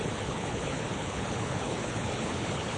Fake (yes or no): yes